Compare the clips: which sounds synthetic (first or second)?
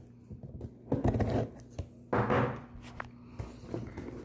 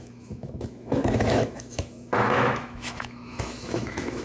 second